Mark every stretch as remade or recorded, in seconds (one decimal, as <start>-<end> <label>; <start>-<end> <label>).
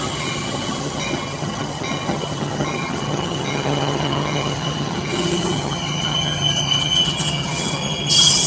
0.0-8.5 remade